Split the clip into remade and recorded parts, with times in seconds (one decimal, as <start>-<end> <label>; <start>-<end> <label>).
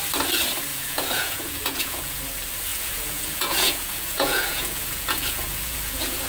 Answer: 0.0-0.7 recorded; 0.7-2.2 remade; 2.2-2.7 recorded; 2.7-6.3 remade